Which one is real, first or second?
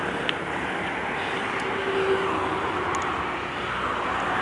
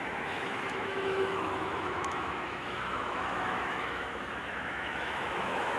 first